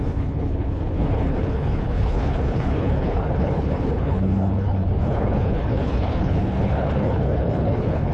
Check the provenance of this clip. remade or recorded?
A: remade